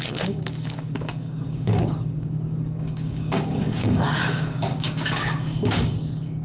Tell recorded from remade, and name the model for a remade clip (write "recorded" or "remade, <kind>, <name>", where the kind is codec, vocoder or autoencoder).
remade, codec, DAC